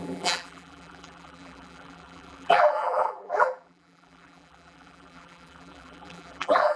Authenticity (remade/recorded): remade